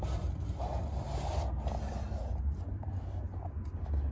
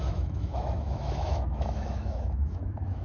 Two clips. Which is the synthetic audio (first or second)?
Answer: second